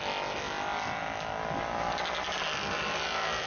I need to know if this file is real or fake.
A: real